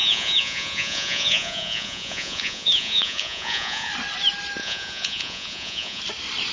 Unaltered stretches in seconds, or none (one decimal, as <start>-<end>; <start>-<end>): 3.9-4.6; 6.0-6.5